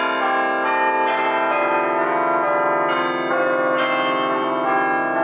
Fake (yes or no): no